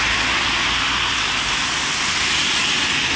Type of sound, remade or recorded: recorded